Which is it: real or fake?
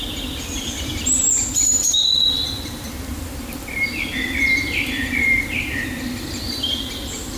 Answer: fake